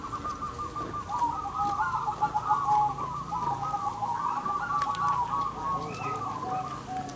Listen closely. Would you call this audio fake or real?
real